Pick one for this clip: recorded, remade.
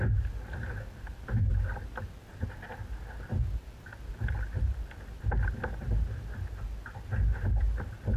recorded